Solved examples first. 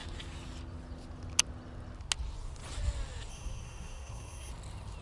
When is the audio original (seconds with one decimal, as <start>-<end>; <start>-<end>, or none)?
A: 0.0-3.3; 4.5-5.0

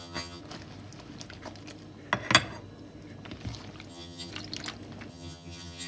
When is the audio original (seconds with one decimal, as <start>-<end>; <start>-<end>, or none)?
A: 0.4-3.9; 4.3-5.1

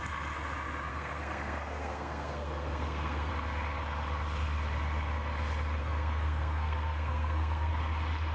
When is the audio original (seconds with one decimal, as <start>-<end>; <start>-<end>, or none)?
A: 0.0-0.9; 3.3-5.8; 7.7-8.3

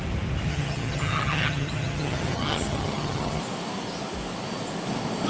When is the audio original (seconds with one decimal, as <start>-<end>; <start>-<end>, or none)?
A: 0.0-0.5; 3.4-5.3

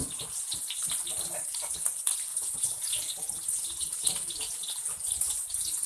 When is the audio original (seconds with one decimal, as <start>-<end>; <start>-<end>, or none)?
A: 0.6-2.3

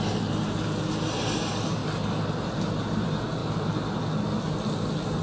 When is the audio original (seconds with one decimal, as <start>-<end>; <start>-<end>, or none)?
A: 0.0-5.2

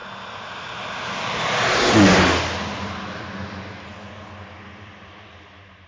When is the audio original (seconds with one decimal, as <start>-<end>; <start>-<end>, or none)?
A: 0.0-5.9

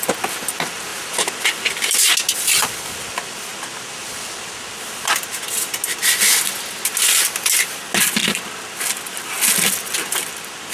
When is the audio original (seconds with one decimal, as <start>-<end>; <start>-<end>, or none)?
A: 0.0-10.7